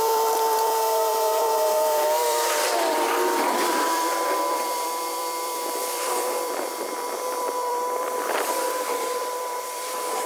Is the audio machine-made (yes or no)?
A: yes